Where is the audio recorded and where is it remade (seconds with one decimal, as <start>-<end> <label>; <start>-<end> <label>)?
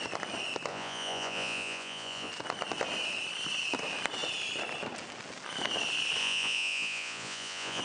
0.0-0.7 recorded; 0.7-2.3 remade; 2.3-6.2 recorded; 6.2-7.8 remade